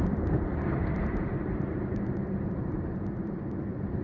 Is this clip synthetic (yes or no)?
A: yes